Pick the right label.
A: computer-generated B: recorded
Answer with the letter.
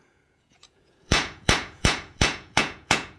A